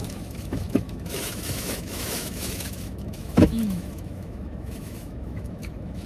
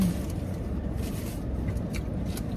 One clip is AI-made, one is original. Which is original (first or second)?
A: second